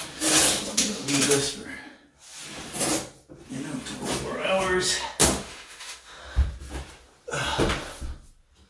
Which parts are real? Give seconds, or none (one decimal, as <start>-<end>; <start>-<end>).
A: 0.0-0.7; 1.2-5.2; 6.2-8.7